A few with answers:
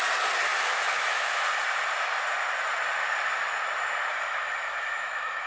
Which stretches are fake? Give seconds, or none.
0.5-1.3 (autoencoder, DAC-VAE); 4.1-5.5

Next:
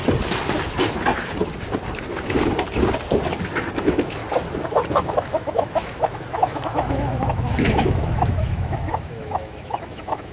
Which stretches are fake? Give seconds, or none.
3.8-4.2 (autoencoder, DAC-VAE); 5.0-10.3

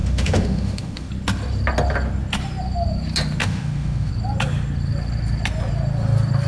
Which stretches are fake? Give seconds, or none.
0.0-1.1 (autoencoder, DAC-VAE); 3.4-4.1

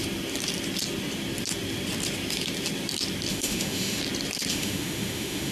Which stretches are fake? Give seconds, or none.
3.3-4.0 (autoencoder, DAC-VAE); 4.5-5.5

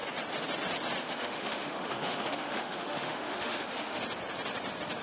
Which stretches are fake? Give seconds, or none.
1.0-4.0 (autoencoder, DAC-VAE)

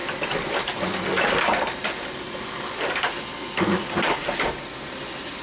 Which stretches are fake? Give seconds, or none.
none